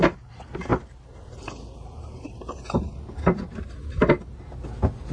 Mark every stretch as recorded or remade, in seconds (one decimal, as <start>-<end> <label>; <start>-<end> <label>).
0.0-0.7 recorded; 0.7-2.8 remade; 2.8-5.1 recorded